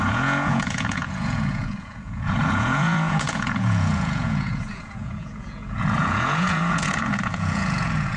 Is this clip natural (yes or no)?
no